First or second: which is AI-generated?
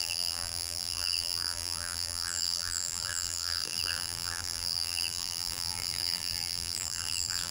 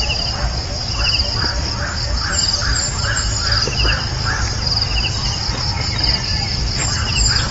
first